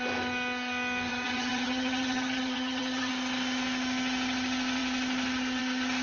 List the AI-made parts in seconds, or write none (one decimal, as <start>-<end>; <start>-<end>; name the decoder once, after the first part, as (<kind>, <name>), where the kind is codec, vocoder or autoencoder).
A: 1.1-3.1 (vocoder, HiFi-GAN)